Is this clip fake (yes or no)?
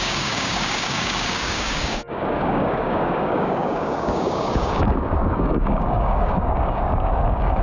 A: yes